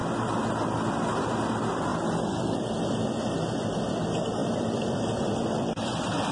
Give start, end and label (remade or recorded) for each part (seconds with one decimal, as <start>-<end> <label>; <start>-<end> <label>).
0.0-4.4 recorded; 4.4-6.3 remade